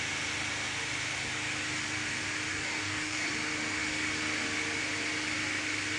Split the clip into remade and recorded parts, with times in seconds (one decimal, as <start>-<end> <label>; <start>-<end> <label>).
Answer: 0.0-2.5 recorded; 2.5-3.3 remade; 3.3-6.0 recorded